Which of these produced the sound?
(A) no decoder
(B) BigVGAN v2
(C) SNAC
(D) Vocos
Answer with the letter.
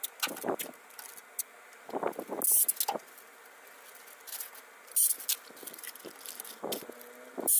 A